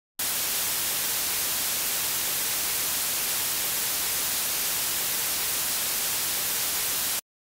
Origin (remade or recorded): recorded